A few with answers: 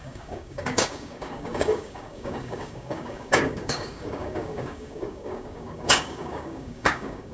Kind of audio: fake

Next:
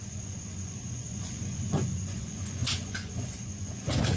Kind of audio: fake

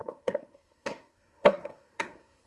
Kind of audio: fake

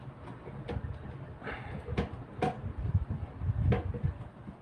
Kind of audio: real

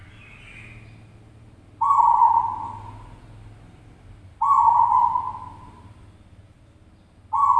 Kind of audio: real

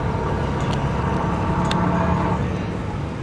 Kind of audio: real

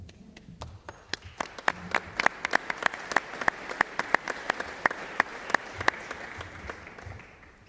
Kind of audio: real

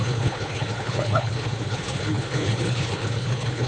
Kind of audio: fake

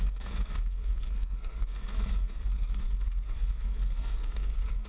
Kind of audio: fake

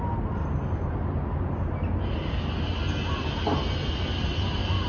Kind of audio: real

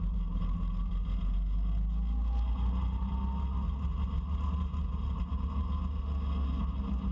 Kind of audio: real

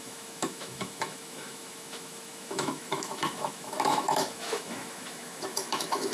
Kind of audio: fake